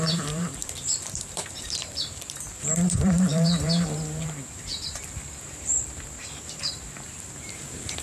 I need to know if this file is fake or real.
fake